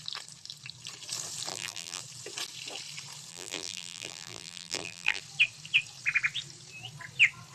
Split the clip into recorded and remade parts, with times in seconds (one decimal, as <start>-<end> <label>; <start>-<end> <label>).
0.0-1.5 recorded; 1.5-2.0 remade; 2.0-3.3 recorded; 3.3-5.2 remade; 5.2-7.5 recorded